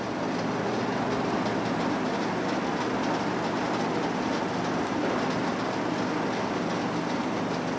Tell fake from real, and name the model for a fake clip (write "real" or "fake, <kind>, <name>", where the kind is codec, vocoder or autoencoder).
real